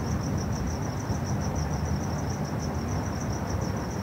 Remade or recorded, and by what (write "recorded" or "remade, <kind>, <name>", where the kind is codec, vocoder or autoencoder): recorded